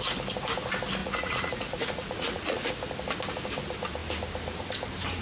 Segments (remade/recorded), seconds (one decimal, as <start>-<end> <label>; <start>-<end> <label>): 0.0-1.0 recorded; 1.0-2.7 remade; 2.7-5.2 recorded